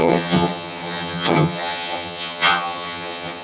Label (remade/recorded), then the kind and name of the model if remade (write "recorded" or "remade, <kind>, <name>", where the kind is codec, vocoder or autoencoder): remade, vocoder, HiFi-GAN